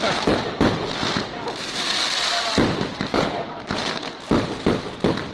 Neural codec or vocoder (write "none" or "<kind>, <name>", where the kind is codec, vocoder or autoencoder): none